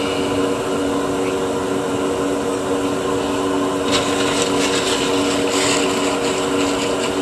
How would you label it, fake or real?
real